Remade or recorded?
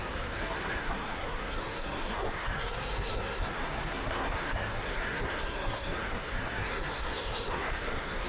remade